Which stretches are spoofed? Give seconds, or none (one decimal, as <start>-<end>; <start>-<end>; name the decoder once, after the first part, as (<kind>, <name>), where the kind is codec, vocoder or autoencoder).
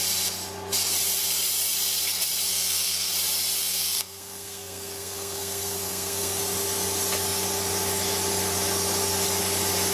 2.5-3.1 (codec, SNAC); 3.6-6.4